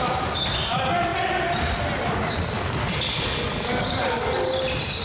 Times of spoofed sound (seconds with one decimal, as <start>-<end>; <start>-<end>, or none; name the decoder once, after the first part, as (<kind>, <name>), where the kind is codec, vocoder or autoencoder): none